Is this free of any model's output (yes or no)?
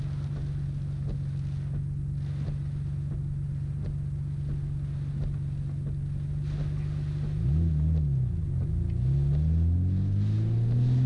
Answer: yes